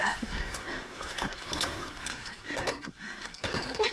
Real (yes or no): no